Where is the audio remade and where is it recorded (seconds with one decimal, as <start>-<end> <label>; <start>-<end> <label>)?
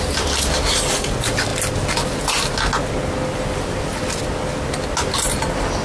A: 0.0-5.8 recorded